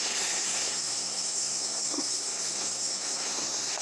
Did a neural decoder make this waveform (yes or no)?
yes